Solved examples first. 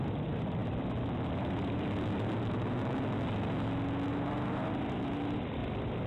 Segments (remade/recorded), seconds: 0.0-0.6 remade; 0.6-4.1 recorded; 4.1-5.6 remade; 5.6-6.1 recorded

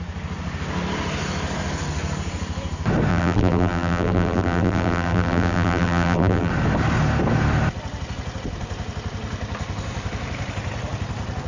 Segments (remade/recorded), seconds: 0.0-3.1 recorded; 3.1-6.5 remade; 6.5-11.5 recorded

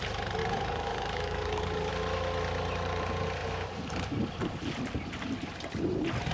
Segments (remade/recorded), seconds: 0.0-0.4 recorded; 0.4-1.9 remade; 1.9-6.3 recorded